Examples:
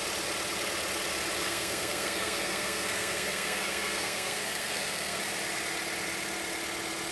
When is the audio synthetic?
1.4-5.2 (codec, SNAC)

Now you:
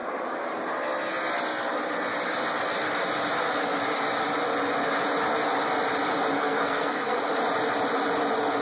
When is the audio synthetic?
6.3-7.3 (codec, SNAC)

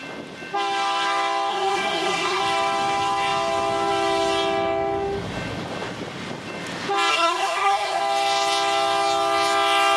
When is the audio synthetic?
1.5-2.4 (codec, SNAC); 7.1-8.0

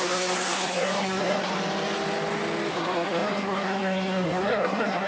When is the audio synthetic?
0.0-1.5 (codec, SNAC); 2.7-5.1